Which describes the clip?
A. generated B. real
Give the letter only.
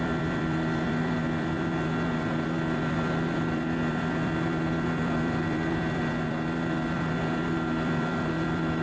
A